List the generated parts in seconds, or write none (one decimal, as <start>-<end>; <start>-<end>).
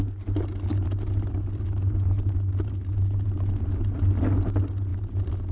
none